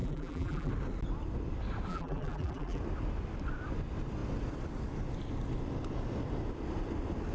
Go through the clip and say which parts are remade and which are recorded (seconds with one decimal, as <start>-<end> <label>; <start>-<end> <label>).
0.0-0.7 remade; 0.7-1.9 recorded; 1.9-2.8 remade; 2.8-7.3 recorded